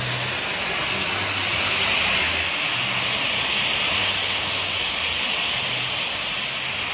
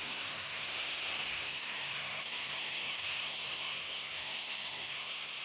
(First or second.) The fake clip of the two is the second